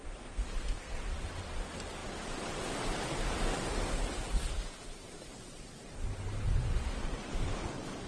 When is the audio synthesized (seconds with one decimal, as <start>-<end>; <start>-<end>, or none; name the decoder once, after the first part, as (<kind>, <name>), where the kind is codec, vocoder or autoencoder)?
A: 0.0-1.0 (codec, SNAC)